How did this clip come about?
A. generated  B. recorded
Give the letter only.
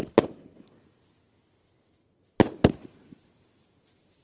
B